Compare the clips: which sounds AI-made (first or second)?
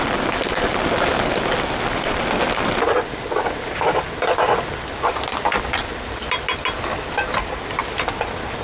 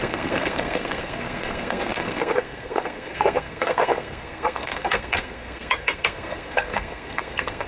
second